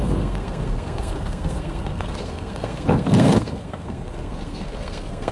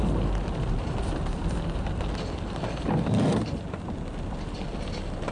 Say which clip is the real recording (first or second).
second